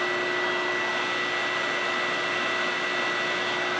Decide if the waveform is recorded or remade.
recorded